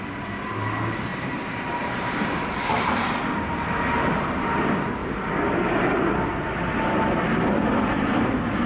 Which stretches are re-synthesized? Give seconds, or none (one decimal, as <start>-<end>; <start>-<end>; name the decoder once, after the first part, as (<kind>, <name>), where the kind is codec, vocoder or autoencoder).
1.1-3.0 (vocoder, BigVGAN v2)